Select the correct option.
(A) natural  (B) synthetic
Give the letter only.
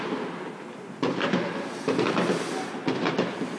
A